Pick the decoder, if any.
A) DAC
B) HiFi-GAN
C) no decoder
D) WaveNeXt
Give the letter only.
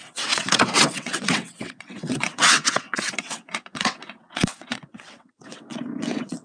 D